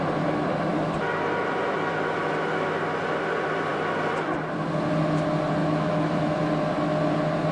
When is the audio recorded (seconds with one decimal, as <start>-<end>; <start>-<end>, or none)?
0.0-5.6; 6.4-7.5

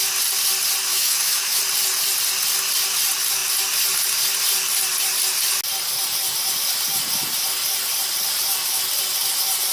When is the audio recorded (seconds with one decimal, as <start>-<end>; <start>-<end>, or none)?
0.0-0.9; 1.6-9.7

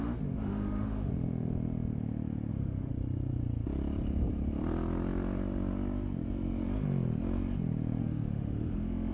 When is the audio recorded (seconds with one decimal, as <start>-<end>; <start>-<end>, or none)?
1.1-2.5; 2.9-8.0

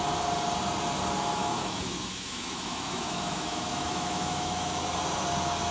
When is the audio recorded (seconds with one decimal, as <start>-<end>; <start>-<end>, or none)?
0.0-1.4; 4.8-5.7

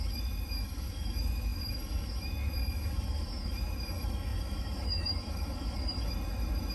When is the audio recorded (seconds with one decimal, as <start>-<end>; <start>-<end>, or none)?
none

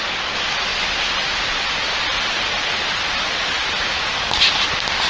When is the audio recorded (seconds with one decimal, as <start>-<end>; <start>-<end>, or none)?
0.0-5.1

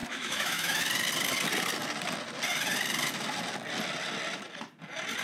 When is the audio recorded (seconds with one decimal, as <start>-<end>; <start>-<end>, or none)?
0.8-5.2